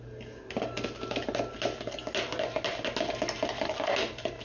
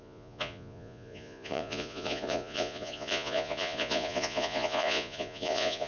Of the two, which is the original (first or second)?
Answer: first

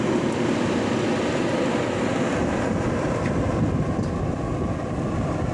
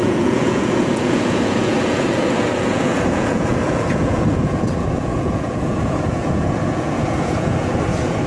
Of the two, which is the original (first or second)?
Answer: first